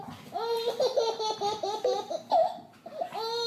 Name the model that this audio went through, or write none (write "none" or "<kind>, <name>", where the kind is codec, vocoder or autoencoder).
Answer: none